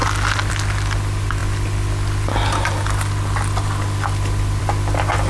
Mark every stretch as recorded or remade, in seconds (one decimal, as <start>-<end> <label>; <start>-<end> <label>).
0.0-5.3 recorded

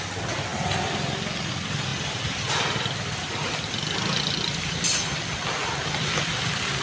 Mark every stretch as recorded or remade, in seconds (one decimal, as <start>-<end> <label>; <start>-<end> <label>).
0.0-6.8 recorded

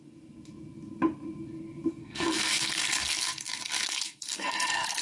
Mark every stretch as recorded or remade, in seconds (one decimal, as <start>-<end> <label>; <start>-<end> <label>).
0.0-2.0 recorded; 2.0-5.0 remade

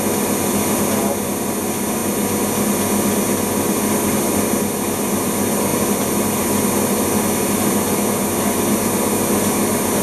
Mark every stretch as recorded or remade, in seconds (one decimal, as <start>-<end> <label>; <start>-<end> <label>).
0.0-10.0 recorded

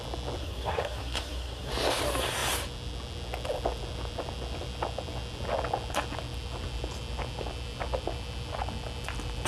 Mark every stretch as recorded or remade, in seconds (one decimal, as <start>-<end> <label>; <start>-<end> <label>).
0.0-0.4 recorded; 0.4-1.7 remade; 1.7-9.5 recorded

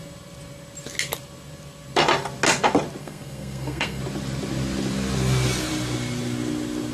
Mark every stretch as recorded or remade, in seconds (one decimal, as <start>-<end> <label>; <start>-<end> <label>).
0.0-3.0 recorded; 3.0-4.0 remade; 4.0-6.9 recorded